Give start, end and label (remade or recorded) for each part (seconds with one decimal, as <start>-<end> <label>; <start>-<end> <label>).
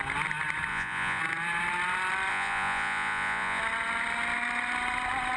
0.0-0.7 recorded; 0.7-1.2 remade; 1.2-2.3 recorded; 2.3-3.6 remade; 3.6-5.4 recorded